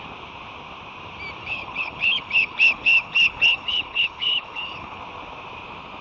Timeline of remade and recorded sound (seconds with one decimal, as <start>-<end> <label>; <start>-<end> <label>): 0.0-1.4 recorded; 1.4-5.0 remade; 5.0-6.0 recorded